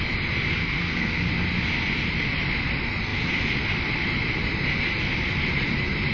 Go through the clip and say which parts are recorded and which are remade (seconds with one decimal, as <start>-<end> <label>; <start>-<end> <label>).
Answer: 0.0-0.6 recorded; 0.6-1.3 remade; 1.3-6.1 recorded